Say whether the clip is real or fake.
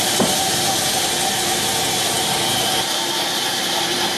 fake